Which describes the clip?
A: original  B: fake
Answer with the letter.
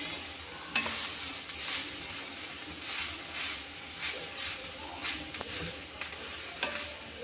A